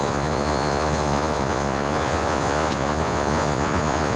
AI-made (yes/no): yes